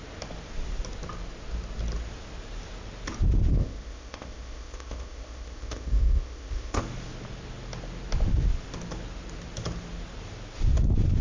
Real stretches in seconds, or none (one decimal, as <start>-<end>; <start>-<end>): 0.0-3.5; 6.8-11.2